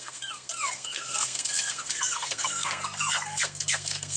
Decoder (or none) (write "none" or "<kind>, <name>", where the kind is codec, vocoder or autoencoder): codec, SNAC